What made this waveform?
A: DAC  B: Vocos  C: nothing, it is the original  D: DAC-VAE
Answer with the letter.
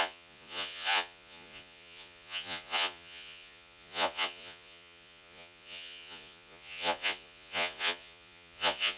B